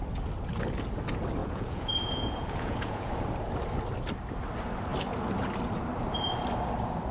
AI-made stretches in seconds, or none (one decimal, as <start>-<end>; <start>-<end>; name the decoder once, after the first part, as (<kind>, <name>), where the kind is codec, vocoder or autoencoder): 1.4-3.1 (vocoder, Vocos)